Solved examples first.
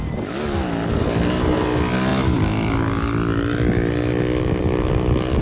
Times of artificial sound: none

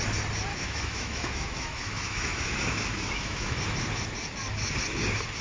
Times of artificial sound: 0.5-3.6 (autoencoder, DAC-VAE)

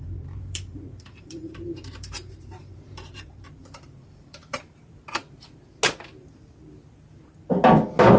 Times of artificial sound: 0.0-5.2 (vocoder, BigVGAN v2)